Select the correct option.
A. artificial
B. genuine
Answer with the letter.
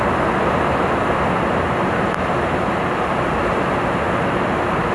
B